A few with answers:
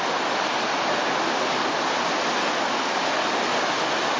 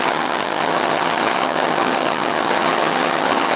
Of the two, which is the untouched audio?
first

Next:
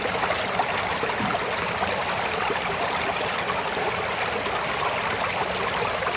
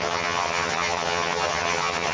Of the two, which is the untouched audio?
first